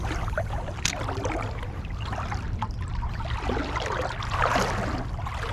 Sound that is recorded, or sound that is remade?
recorded